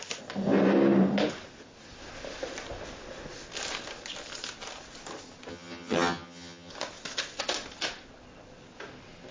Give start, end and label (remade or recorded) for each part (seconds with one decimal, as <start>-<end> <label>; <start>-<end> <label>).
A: 0.0-5.5 recorded; 5.5-6.7 remade; 6.7-9.3 recorded

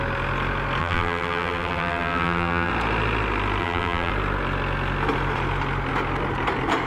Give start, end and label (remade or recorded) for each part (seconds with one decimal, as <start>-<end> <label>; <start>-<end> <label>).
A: 0.0-0.8 recorded; 0.8-2.7 remade; 2.7-3.6 recorded; 3.6-4.1 remade; 4.1-6.9 recorded

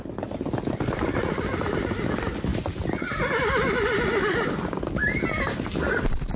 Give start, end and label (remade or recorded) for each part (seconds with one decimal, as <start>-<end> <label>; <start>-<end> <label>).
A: 0.0-6.4 recorded

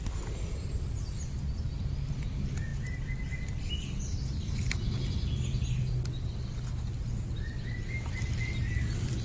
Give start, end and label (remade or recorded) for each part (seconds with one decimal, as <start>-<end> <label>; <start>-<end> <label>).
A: 0.0-9.2 recorded

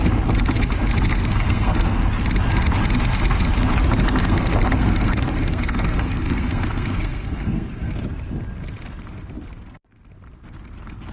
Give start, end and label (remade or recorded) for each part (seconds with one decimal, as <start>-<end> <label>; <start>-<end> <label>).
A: 0.0-1.1 recorded; 1.1-2.0 remade; 2.0-4.2 recorded; 4.2-7.9 remade; 7.9-11.1 recorded